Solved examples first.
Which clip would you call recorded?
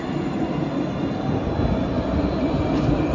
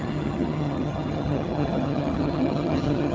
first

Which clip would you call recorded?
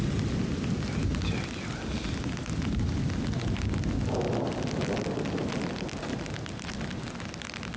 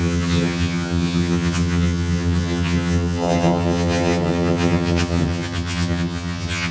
first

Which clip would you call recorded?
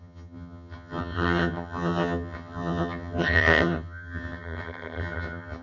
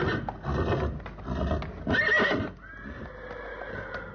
second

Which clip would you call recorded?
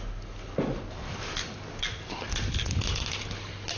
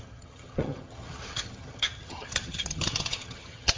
first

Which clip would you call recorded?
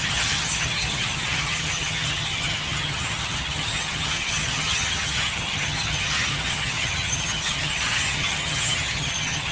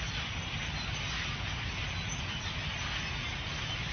second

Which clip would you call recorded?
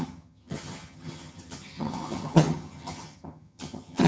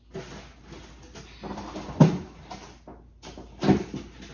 second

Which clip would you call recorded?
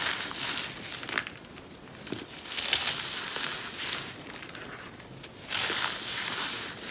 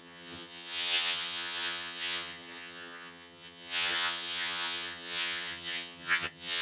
first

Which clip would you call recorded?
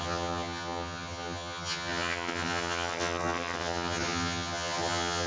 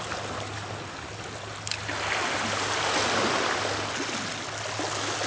second